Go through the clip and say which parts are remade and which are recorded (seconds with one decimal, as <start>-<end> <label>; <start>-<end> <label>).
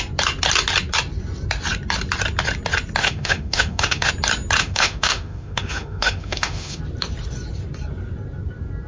0.0-3.0 recorded; 3.0-4.1 remade; 4.1-4.6 recorded; 4.6-6.8 remade; 6.8-8.9 recorded